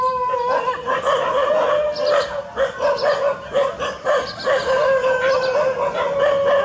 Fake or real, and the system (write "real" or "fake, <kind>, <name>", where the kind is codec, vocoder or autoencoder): real